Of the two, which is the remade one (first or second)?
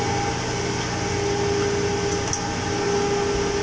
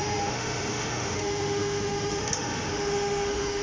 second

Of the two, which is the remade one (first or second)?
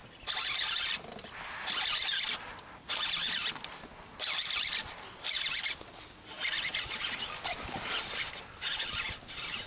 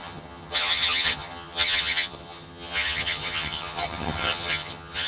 second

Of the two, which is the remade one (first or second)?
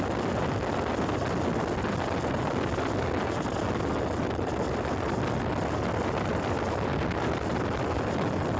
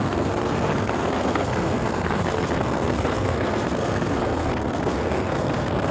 second